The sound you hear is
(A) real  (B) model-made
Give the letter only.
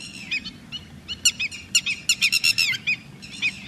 A